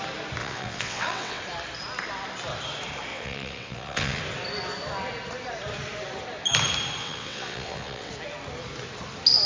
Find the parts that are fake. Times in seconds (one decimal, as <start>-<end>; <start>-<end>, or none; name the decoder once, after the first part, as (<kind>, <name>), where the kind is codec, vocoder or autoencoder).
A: 0.4-1.4 (vocoder, WaveNeXt); 3.1-4.2; 7.0-8.1